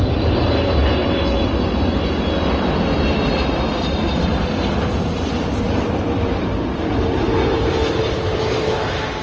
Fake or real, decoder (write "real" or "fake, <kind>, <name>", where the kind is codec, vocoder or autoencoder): real